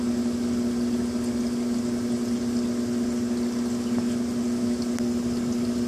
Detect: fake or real real